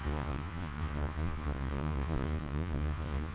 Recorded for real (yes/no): no